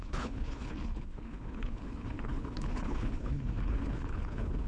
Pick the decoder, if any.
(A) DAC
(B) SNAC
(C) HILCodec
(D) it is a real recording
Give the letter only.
C